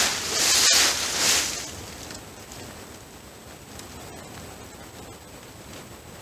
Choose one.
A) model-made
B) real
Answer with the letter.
B